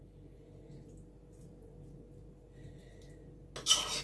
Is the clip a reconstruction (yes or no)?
no